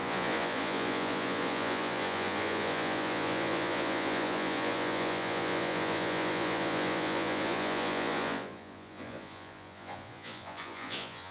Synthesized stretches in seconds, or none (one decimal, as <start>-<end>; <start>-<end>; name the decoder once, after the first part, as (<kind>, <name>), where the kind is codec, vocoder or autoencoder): 0.0-11.3 (vocoder, Vocos)